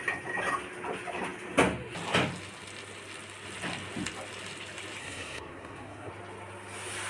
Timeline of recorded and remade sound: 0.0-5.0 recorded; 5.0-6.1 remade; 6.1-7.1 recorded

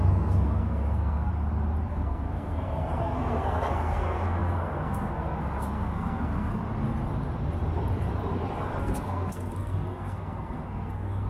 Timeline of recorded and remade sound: 0.0-1.3 remade; 1.3-1.9 recorded; 1.9-6.6 remade; 6.6-8.8 recorded; 8.8-11.3 remade

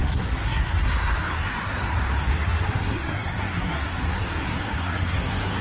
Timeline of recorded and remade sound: 0.0-1.8 remade; 1.8-2.3 recorded; 2.3-5.6 remade

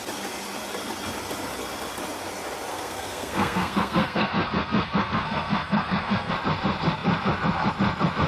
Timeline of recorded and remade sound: 0.0-2.7 recorded; 2.7-6.3 remade; 6.3-8.3 recorded

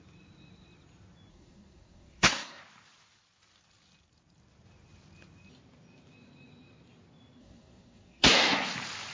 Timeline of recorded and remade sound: 0.0-1.3 recorded; 1.3-2.6 remade; 2.6-7.4 recorded; 7.4-8.7 remade; 8.7-9.1 recorded